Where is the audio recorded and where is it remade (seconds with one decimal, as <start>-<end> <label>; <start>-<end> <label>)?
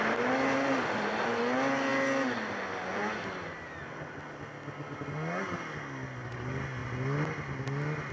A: 0.0-8.1 recorded